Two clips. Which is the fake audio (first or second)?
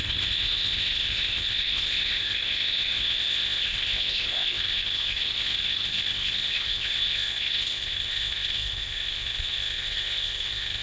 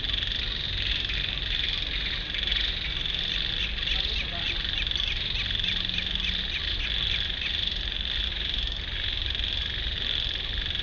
first